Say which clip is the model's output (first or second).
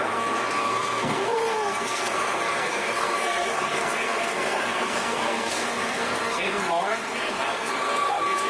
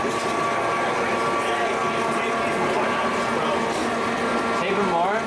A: first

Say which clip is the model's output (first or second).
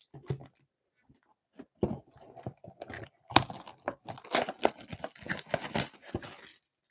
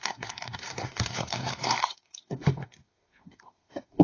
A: second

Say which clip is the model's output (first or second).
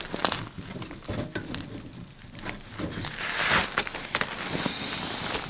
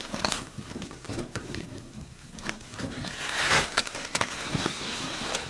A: second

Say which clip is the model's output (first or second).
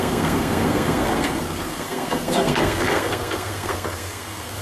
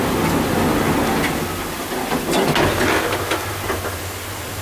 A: first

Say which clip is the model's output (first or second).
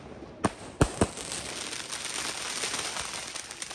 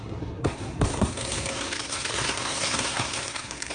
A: second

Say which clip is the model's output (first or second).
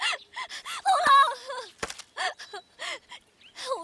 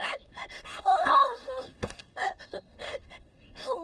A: second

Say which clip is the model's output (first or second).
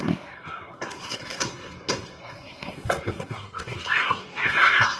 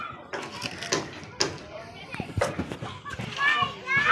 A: first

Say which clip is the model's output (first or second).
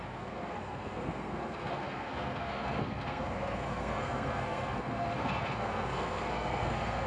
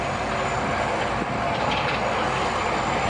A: first